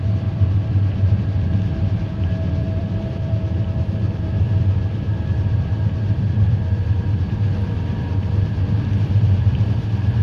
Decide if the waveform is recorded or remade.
remade